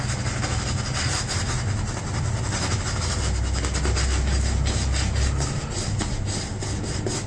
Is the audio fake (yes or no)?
no